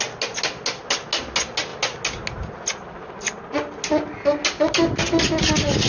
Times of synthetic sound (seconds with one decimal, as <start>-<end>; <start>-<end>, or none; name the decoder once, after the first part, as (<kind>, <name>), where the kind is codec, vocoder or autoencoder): none